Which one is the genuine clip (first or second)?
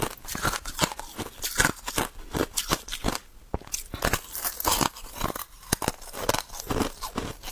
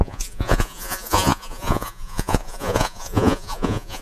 first